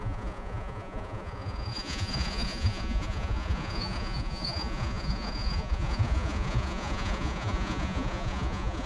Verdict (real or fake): fake